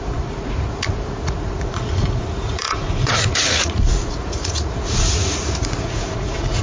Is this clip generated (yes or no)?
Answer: yes